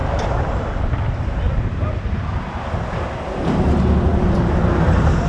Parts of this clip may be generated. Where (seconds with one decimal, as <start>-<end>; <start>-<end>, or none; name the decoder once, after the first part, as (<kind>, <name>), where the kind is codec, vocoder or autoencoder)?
4.1-5.3 (vocoder, BigVGAN v2)